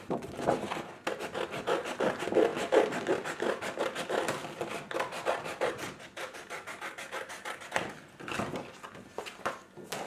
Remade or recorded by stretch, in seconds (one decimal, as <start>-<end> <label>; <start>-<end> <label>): 0.0-10.1 recorded